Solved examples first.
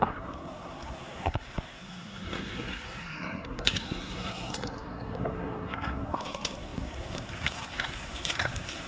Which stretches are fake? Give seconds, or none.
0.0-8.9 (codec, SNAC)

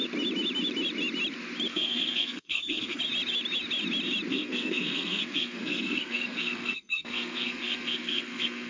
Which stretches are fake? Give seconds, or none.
1.7-3.0 (codec, SNAC); 4.3-8.7

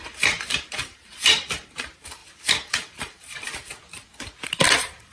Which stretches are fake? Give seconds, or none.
0.0-3.7 (vocoder, BigVGAN v2)

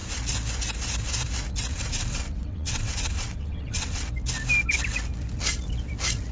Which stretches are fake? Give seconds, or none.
1.7-4.1 (vocoder, WaveNeXt)

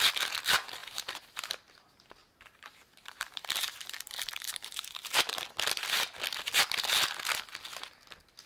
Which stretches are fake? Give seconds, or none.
0.8-1.4 (vocoder, BigVGAN v2); 2.2-5.5

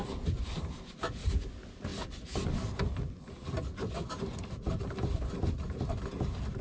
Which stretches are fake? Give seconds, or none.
none